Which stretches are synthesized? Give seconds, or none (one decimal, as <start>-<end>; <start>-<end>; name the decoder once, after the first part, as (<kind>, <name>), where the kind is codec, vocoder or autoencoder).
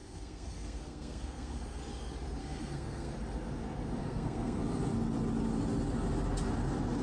0.0-1.8 (codec, SNAC); 2.4-3.1; 4.0-4.6